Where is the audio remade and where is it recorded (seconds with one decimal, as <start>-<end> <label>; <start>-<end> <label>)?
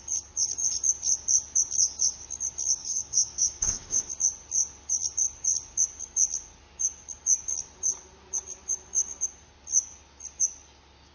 0.0-2.8 recorded; 2.8-4.1 remade; 4.1-11.1 recorded